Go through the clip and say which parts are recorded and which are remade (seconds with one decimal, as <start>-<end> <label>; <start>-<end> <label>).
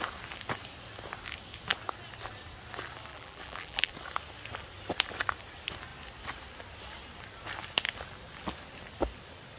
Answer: 0.0-3.1 recorded; 3.1-3.9 remade; 3.9-9.6 recorded